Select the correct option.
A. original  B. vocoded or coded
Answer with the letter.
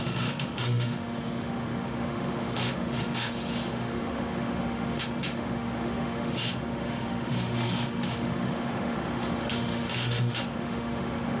B